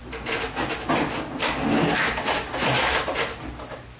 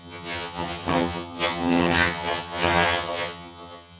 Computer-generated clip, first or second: second